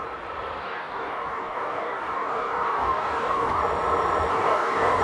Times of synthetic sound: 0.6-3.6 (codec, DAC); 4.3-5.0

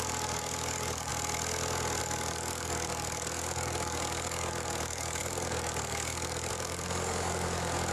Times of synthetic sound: 0.0-1.1 (codec, DAC); 2.0-7.9

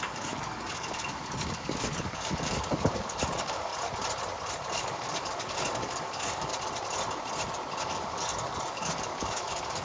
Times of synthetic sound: 0.0-3.7 (codec, DAC); 4.7-6.5; 7.8-9.8

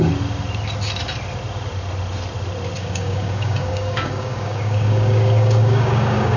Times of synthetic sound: 2.8-6.4 (codec, DAC)

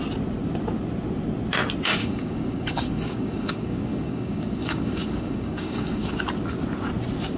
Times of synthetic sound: 2.0-6.1 (codec, DAC)

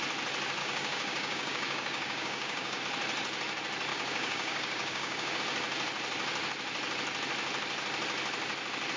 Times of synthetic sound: 0.6-2.8 (codec, DAC); 3.9-5.4

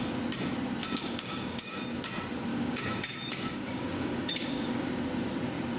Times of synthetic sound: 0.8-1.8 (codec, DAC); 2.5-5.0

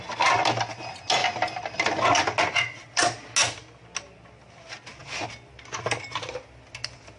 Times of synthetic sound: none